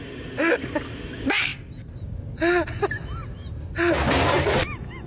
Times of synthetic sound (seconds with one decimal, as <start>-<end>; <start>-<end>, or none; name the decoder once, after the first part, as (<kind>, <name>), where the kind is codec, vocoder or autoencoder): none